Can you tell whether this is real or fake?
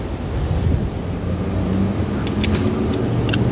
real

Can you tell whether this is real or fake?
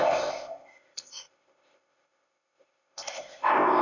fake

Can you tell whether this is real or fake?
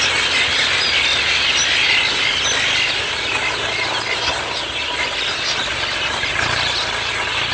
real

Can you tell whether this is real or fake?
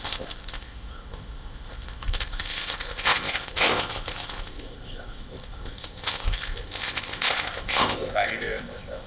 fake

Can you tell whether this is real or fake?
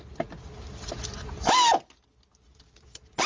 real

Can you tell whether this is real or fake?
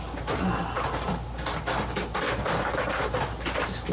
real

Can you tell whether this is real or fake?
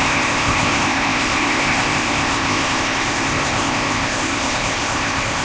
fake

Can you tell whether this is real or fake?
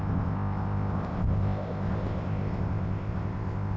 fake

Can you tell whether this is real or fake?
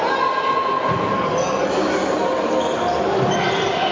real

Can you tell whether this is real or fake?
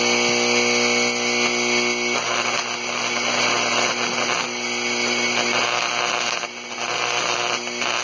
real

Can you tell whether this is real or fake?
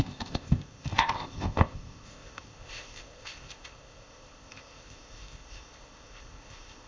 fake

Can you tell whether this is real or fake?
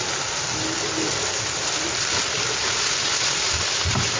real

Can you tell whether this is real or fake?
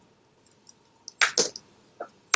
real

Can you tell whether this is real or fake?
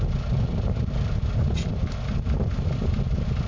real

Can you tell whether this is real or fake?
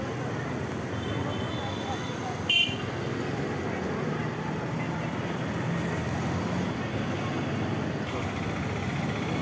real